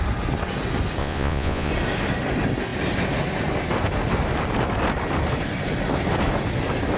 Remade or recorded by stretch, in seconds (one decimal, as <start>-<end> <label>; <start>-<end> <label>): 0.0-1.0 recorded; 1.0-1.7 remade; 1.7-7.0 recorded